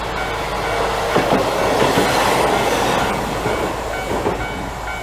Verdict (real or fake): real